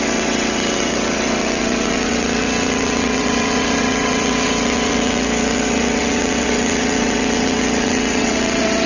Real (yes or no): no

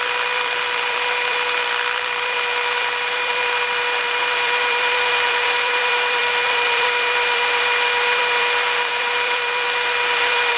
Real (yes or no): no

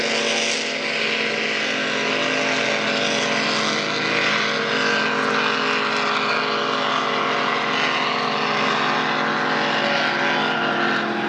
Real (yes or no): yes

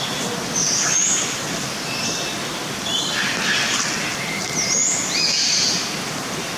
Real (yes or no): yes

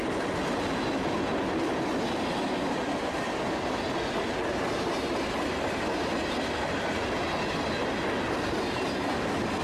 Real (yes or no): yes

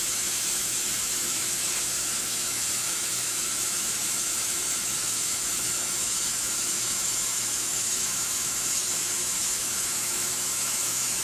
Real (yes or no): no